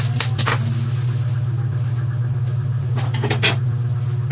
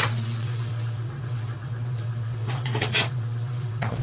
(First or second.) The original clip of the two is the first